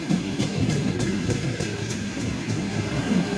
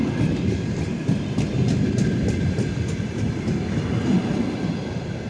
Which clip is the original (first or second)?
second